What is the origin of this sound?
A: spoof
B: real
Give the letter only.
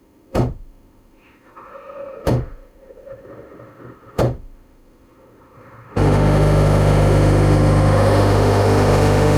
A